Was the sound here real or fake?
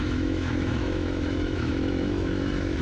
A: fake